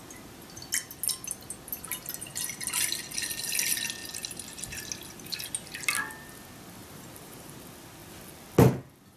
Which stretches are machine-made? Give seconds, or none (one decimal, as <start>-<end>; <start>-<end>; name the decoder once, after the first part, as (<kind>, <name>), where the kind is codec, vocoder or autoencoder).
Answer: 6.8-7.5 (vocoder, BigVGAN v2)